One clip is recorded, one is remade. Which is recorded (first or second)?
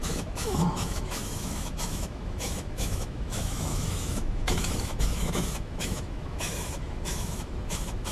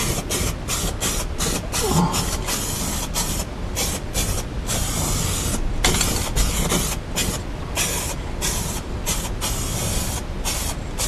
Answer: second